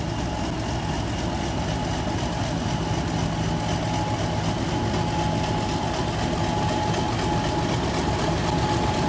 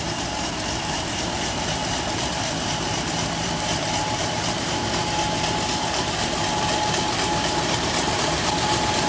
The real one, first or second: first